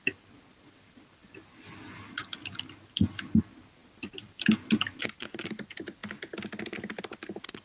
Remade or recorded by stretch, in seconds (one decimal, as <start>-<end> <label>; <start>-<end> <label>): 0.0-7.6 recorded